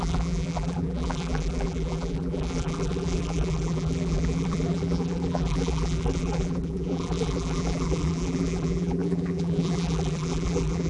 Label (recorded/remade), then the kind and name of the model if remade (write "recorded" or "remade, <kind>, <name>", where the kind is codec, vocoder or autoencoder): remade, vocoder, BigVGAN v2